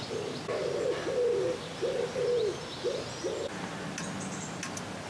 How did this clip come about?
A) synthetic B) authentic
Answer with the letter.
B